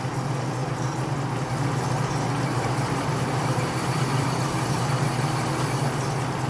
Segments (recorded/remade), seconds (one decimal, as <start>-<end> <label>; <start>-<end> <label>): 0.0-2.5 recorded; 2.5-4.9 remade; 4.9-6.5 recorded